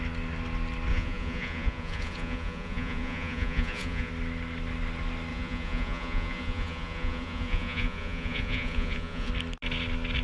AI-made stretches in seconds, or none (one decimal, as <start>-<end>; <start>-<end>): 0.9-4.1; 5.3-9.3